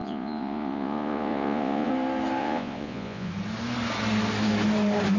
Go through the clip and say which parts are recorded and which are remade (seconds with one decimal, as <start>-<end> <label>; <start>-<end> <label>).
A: 0.0-1.9 remade; 1.9-2.4 recorded; 2.4-3.3 remade; 3.3-5.2 recorded